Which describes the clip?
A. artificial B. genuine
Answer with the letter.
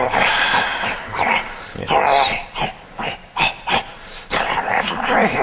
B